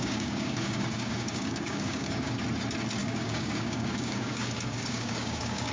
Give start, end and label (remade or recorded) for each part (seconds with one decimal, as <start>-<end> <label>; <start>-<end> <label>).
0.0-2.4 remade; 2.4-3.0 recorded; 3.0-5.7 remade